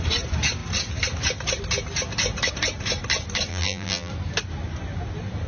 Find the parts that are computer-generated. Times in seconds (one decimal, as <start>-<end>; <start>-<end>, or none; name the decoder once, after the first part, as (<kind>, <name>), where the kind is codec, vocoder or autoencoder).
3.5-4.1 (vocoder, BigVGAN v2)